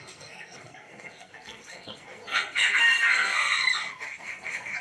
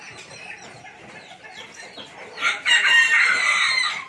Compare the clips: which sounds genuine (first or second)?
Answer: second